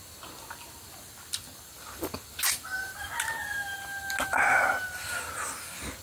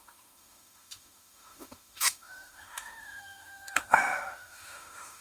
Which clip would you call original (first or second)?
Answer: first